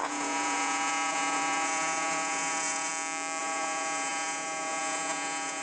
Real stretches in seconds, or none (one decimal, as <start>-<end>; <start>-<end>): 2.9-3.4